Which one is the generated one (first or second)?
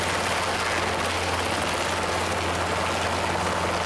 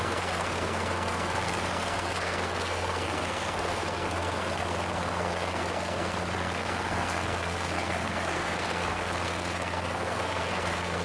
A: second